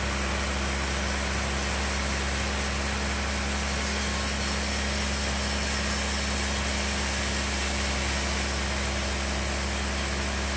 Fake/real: real